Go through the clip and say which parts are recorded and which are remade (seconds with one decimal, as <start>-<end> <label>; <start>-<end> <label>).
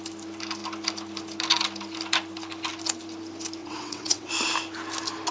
0.0-3.6 recorded; 3.6-4.3 remade; 4.3-5.3 recorded